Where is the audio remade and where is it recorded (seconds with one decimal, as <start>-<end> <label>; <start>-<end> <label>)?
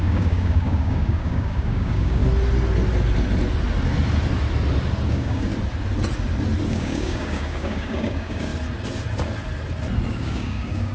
0.0-2.2 remade; 2.2-5.1 recorded; 5.1-5.5 remade; 5.5-6.7 recorded; 6.7-8.5 remade; 8.5-10.1 recorded; 10.1-10.9 remade